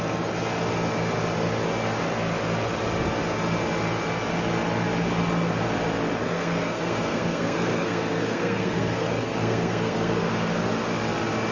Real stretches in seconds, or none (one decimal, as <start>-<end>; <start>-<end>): 0.0-6.2; 10.3-11.5